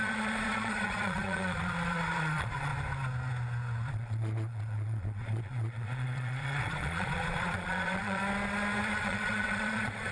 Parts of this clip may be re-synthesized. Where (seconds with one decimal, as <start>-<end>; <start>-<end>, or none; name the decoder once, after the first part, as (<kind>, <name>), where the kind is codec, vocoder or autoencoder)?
0.0-2.7 (vocoder, Vocos); 3.9-8.2; 9.0-10.1